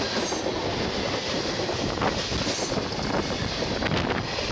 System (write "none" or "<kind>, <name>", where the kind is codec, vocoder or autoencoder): none